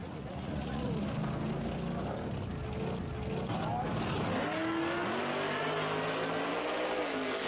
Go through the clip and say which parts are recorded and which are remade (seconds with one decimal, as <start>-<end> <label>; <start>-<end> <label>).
0.0-1.0 remade; 1.0-7.5 recorded